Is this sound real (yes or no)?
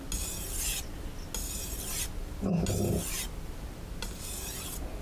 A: yes